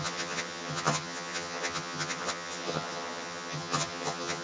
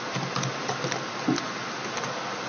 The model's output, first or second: first